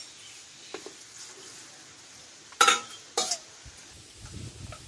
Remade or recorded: recorded